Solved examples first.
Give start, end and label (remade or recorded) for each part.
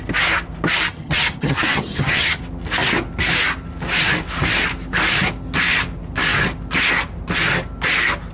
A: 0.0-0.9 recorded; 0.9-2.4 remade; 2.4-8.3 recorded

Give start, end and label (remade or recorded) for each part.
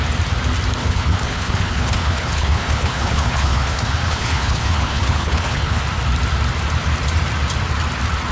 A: 0.0-0.8 recorded; 0.8-5.8 remade; 5.8-8.3 recorded